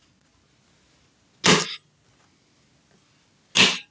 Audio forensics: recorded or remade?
recorded